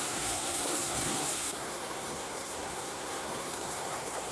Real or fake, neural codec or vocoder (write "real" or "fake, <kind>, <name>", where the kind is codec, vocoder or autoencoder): fake, codec, SNAC